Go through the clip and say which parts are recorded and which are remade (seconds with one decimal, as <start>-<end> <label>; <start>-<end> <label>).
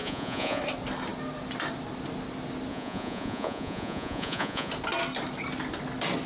0.0-0.6 remade; 0.6-2.7 recorded; 2.7-4.7 remade; 4.7-6.3 recorded